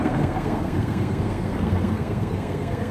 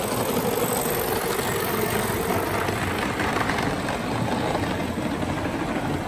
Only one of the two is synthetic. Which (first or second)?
first